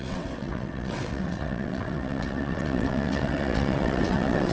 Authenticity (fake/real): fake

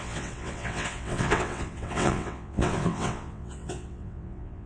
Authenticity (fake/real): fake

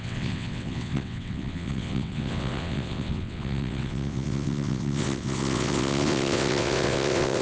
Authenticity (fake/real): fake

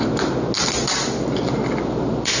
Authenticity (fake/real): real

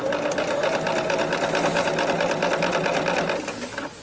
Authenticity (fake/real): real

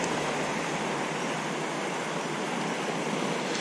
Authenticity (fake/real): real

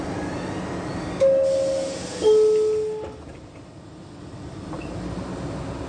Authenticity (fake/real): real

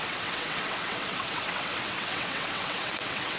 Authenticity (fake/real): fake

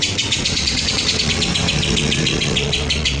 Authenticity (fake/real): fake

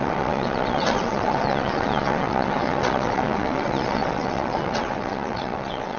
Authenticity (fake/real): fake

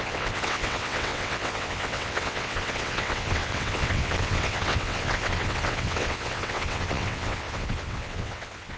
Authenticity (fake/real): fake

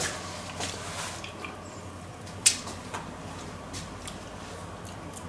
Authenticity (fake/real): real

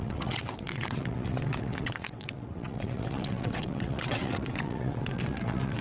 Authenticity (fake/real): fake